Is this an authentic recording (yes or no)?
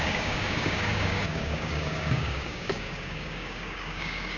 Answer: no